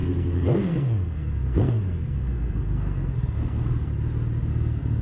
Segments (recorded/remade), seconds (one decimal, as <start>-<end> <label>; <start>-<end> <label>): 0.0-3.9 remade; 3.9-4.5 recorded; 4.5-5.0 remade